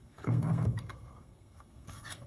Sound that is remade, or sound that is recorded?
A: remade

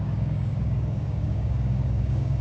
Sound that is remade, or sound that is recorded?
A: remade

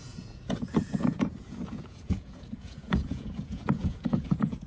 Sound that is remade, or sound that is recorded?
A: remade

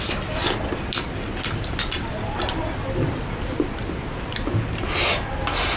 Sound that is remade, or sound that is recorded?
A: recorded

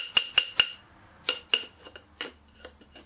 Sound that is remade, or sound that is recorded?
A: recorded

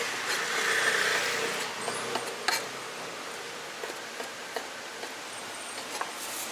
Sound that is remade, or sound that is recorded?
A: recorded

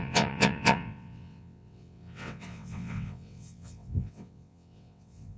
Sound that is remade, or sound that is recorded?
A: remade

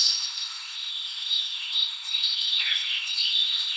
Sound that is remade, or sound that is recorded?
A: remade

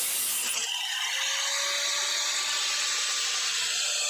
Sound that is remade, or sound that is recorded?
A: recorded